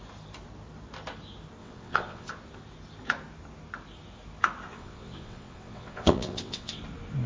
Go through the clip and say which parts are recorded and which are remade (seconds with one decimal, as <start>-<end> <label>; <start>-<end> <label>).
0.0-1.6 recorded; 1.6-2.3 remade; 2.3-4.7 recorded; 4.7-6.8 remade; 6.8-7.3 recorded